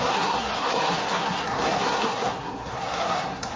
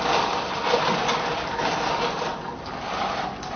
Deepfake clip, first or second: first